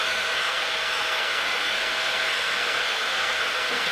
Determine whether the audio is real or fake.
fake